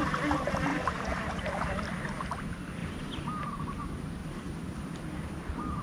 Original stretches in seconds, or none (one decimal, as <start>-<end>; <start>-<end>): 0.0-0.7; 1.5-2.8; 3.8-4.2; 5.3-5.8